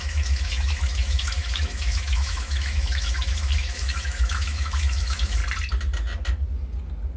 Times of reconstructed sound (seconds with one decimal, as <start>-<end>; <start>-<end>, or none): 0.0-5.4